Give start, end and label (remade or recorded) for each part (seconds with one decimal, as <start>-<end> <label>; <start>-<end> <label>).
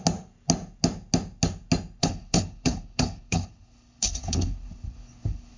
0.0-2.0 recorded; 2.0-5.6 remade